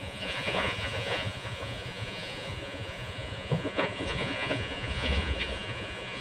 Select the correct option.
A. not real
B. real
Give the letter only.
A